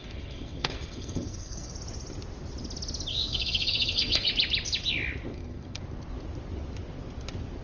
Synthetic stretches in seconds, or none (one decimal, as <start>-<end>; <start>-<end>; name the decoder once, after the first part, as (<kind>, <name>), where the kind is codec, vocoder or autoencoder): 0.0-1.7 (codec, SNAC); 3.1-4.3; 5.3-5.8